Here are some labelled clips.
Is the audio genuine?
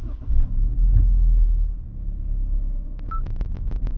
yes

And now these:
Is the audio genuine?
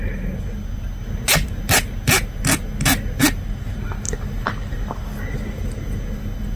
yes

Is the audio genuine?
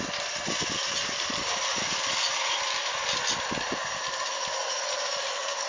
yes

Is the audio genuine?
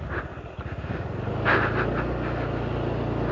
yes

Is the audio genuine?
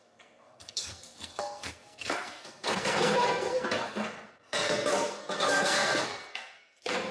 no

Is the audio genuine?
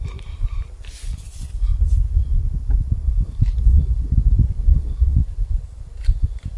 no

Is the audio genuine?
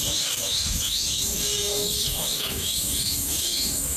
no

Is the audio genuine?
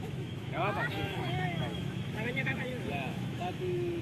no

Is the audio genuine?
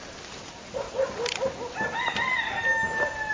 yes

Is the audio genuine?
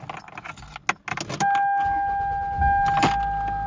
yes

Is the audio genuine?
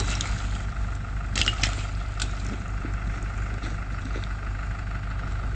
yes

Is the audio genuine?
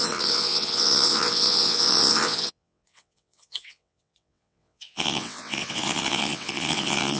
no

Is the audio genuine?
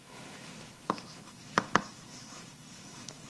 no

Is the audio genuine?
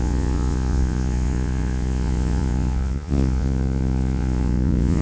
no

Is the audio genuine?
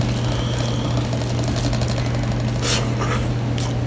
yes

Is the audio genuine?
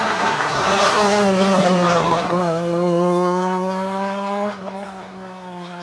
no